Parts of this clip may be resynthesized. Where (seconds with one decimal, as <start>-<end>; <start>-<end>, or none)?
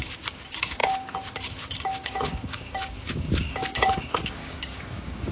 0.0-5.3